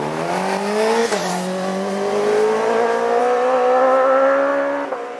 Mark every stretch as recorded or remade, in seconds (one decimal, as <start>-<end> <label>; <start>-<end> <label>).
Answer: 0.0-5.2 recorded